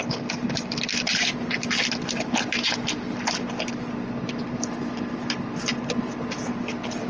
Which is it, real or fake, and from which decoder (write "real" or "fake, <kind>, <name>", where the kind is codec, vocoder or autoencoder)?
real